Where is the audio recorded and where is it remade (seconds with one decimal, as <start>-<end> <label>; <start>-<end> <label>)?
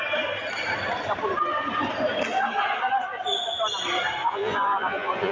0.0-4.2 recorded; 4.2-5.3 remade